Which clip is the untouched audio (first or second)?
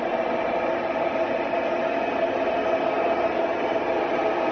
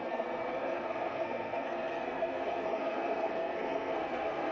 first